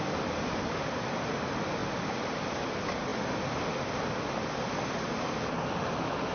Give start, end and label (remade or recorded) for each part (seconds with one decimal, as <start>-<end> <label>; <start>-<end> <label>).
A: 0.0-6.3 recorded